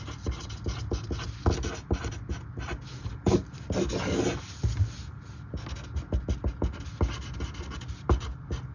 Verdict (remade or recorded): recorded